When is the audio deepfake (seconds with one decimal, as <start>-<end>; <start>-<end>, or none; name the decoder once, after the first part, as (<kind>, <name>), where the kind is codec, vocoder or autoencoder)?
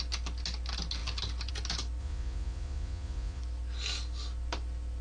2.0-3.4 (vocoder, Vocos)